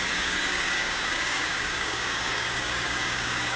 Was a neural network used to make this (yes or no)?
yes